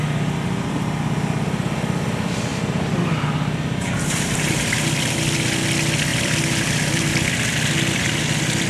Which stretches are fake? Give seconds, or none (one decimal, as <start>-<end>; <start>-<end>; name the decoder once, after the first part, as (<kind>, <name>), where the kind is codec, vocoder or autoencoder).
2.5-5.1 (vocoder, BigVGAN v2); 6.1-7.1